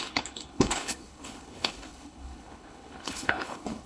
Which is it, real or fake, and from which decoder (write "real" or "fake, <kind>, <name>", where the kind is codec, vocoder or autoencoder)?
fake, codec, HILCodec